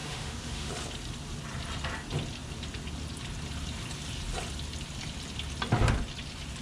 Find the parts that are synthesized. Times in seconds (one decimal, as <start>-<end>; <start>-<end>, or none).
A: 0.0-0.7